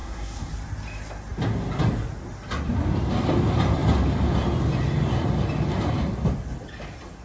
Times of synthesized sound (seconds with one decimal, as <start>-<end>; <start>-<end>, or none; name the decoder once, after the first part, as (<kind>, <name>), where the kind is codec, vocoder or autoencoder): 0.0-0.5 (codec, SNAC)